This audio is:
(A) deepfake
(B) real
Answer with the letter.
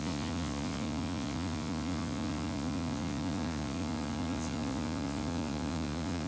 A